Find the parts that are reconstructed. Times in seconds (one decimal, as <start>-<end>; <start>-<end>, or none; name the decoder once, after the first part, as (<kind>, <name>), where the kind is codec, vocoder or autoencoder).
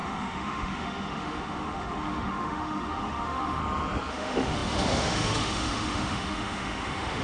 0.0-3.6 (autoencoder, DAC-VAE); 4.1-7.2